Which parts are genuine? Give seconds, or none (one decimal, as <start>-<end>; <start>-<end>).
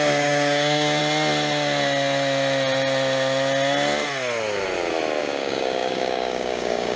1.0-5.2